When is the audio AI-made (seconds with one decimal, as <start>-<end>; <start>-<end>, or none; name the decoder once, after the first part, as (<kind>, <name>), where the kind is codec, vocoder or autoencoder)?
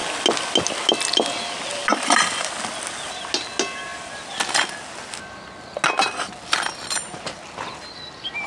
none